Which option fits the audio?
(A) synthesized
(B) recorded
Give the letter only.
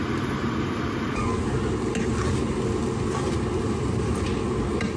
B